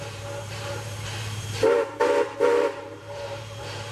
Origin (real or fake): fake